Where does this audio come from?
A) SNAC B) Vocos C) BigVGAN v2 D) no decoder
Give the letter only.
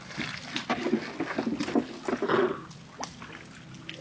D